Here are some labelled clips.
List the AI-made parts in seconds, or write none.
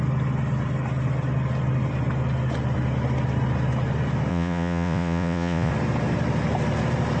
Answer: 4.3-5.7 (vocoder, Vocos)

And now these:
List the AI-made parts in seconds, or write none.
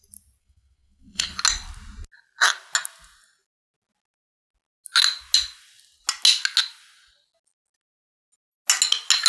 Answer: 0.4-1.3 (codec, SNAC)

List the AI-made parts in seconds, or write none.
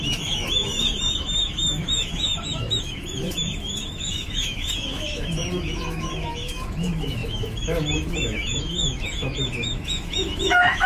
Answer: 0.0-10.9 (autoencoder, DAC-VAE)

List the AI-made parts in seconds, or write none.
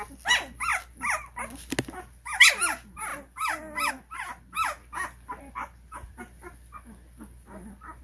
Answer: none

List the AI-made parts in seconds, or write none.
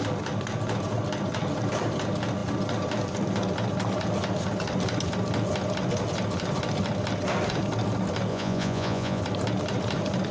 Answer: 8.3-9.2 (vocoder, Vocos)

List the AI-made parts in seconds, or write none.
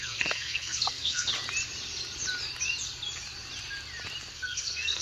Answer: 0.0-1.3 (codec, SNAC); 4.3-5.0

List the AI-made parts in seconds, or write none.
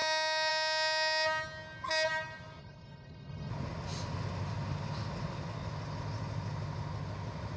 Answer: 2.6-3.5 (codec, HILCodec)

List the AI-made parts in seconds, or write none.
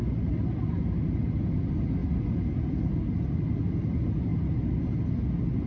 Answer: none